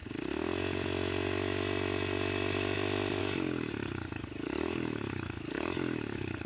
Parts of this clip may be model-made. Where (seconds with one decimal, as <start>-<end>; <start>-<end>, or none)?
3.2-6.5